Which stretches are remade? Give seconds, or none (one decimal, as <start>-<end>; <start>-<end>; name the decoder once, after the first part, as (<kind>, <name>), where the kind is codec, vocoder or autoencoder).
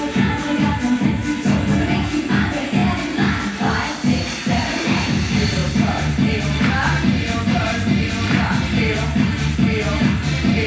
0.0-1.2 (vocoder, BigVGAN v2); 2.3-2.8; 4.5-10.7